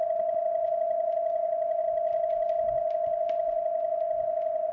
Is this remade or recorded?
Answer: recorded